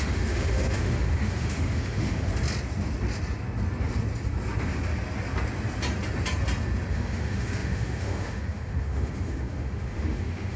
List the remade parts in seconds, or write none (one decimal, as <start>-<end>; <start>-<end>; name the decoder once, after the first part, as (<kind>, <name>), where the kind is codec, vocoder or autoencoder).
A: 0.0-2.3 (autoencoder, DAC-VAE); 6.9-10.6